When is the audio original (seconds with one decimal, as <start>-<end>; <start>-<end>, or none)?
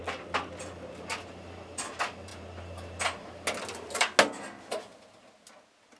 0.0-6.0